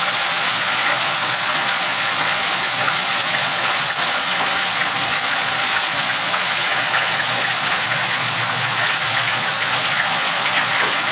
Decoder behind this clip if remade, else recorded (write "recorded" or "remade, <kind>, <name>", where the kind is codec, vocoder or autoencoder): remade, vocoder, Vocos